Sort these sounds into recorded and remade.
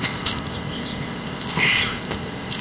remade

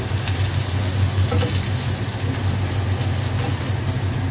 recorded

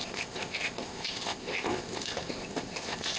remade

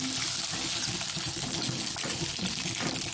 recorded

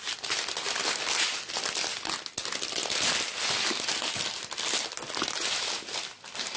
recorded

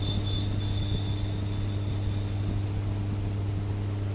recorded